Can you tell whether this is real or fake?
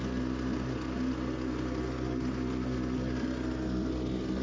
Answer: real